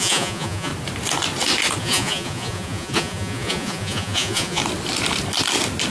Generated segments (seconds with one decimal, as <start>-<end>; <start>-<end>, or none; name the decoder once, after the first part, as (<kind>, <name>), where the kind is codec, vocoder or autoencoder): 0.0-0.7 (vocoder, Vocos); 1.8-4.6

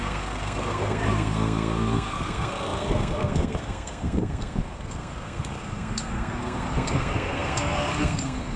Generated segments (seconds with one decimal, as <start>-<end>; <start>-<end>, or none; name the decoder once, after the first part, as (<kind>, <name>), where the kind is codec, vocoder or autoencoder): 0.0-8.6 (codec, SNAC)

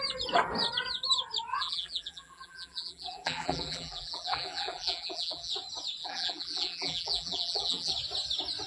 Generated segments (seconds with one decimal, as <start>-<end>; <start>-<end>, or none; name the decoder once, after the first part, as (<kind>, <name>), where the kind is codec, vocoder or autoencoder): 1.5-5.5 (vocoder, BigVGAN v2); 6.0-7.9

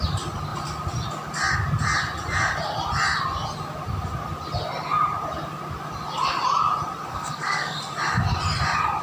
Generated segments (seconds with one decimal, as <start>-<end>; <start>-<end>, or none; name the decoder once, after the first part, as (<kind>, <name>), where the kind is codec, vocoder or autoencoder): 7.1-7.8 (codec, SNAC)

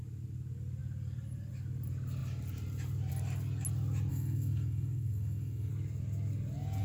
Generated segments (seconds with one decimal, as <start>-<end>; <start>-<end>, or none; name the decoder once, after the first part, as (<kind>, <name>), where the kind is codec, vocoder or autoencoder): 4.1-5.7 (codec, SNAC)

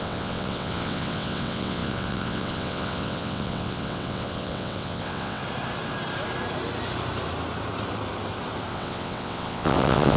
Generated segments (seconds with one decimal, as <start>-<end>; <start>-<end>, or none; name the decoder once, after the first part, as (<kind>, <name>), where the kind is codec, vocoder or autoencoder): 0.0-5.4 (vocoder, WaveNeXt); 8.7-10.2

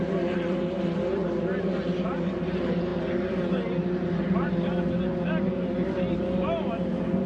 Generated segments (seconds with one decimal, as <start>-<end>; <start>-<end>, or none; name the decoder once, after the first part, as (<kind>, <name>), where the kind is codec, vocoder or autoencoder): none